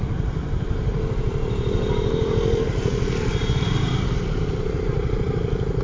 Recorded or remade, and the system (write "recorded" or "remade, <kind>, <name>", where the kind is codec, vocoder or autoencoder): remade, vocoder, BigVGAN v2